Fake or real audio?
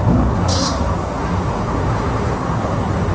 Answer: fake